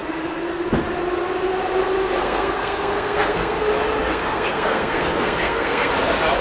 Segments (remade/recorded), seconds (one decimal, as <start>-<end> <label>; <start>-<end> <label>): 0.0-2.2 recorded; 2.2-3.6 remade; 3.6-4.0 recorded; 4.0-5.9 remade; 5.9-6.4 recorded

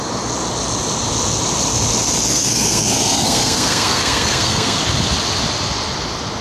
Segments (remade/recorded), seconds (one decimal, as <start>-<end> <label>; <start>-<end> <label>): 0.0-2.3 recorded; 2.3-4.8 remade; 4.8-6.4 recorded

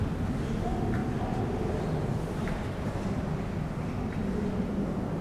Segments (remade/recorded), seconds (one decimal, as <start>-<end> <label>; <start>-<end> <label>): 0.0-5.2 recorded

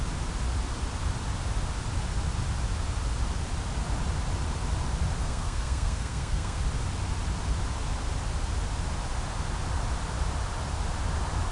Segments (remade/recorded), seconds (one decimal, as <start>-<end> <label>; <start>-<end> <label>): 0.0-5.2 recorded; 5.2-6.6 remade; 6.6-11.5 recorded